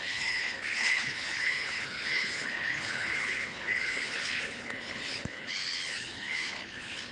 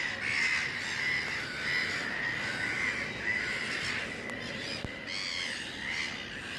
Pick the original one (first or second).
second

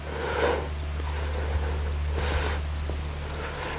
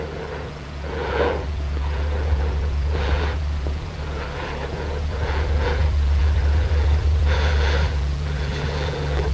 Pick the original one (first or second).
first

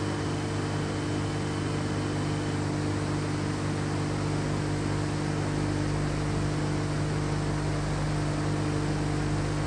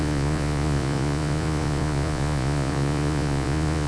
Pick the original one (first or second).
first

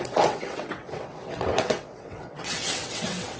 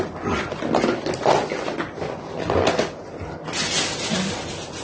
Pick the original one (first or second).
second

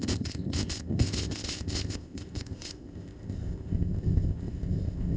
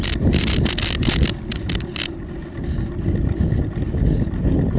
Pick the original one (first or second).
second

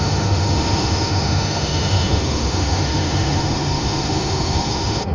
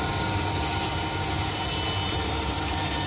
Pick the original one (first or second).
second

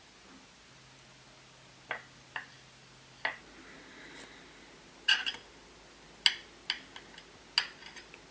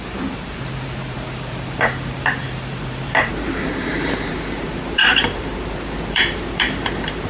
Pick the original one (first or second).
first